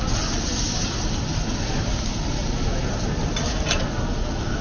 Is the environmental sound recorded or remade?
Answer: recorded